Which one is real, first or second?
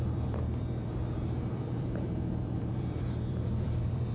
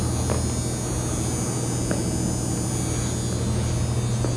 second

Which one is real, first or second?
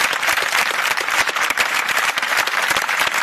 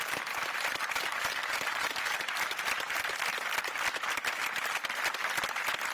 second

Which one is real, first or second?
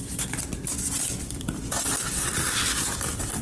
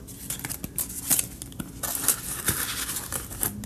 second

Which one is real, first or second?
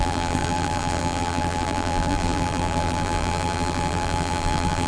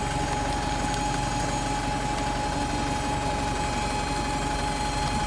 second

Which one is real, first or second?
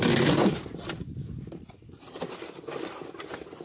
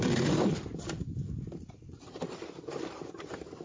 first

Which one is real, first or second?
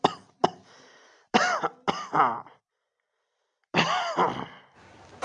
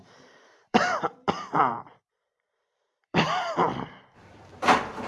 first